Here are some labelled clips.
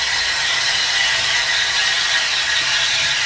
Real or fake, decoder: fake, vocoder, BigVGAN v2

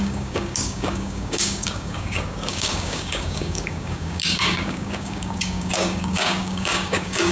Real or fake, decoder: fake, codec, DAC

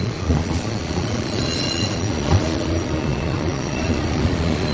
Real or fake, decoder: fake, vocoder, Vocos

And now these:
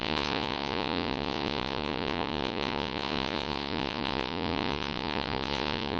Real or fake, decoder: fake, vocoder, Vocos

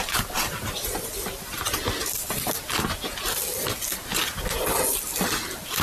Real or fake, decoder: real